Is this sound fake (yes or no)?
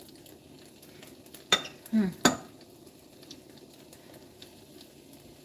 no